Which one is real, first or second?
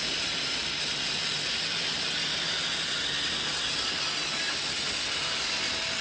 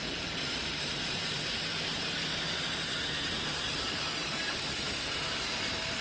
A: first